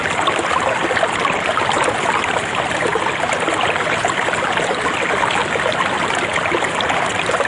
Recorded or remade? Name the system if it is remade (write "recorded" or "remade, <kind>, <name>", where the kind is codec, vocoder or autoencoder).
recorded